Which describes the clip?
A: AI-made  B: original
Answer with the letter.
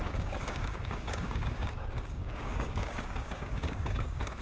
A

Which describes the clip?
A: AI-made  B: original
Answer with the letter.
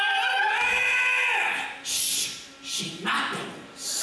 B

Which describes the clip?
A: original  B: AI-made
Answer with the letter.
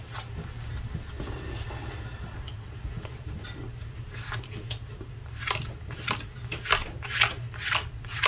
A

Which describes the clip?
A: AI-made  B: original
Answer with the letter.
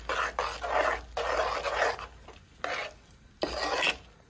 B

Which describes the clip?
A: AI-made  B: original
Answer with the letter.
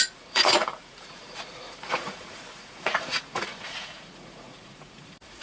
A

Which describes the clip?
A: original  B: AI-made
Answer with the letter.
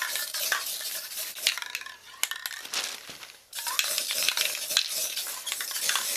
A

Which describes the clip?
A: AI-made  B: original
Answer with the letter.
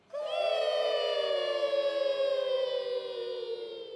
B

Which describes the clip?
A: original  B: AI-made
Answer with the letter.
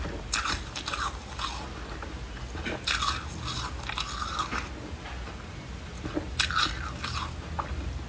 A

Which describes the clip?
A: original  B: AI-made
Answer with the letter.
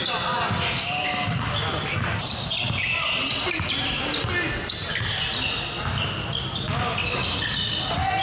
A